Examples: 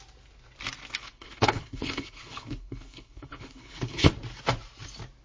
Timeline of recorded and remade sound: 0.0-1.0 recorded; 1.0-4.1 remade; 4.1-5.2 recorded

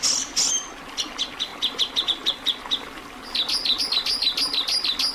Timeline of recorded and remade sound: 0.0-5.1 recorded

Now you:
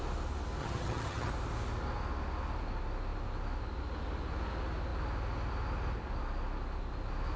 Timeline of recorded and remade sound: 0.0-0.6 recorded; 0.6-1.3 remade; 1.3-7.4 recorded

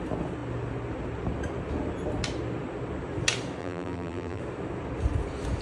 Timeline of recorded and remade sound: 0.0-3.6 recorded; 3.6-4.4 remade; 4.4-5.6 recorded

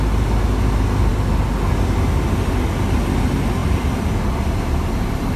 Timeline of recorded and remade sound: 0.0-5.4 recorded

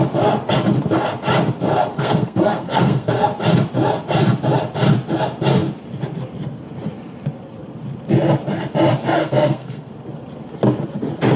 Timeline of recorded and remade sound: 0.0-1.9 recorded; 1.9-3.1 remade; 3.1-9.2 recorded; 9.2-9.9 remade; 9.9-11.4 recorded

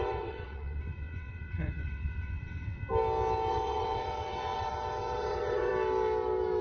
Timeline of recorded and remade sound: 0.0-2.8 remade; 2.8-3.5 recorded; 3.5-5.7 remade; 5.7-6.6 recorded

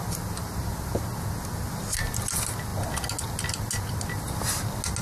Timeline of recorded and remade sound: 0.0-5.0 recorded